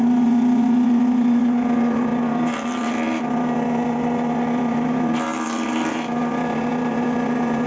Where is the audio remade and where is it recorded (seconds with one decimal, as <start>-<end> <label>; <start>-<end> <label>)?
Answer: 0.0-7.7 recorded